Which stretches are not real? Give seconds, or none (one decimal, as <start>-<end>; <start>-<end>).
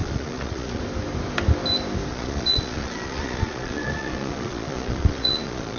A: 0.0-0.8; 2.1-5.8